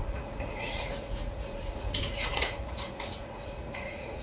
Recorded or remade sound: remade